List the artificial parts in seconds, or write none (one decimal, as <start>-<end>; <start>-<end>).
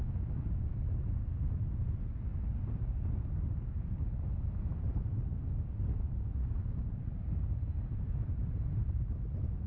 none